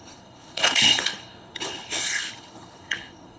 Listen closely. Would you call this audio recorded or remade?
remade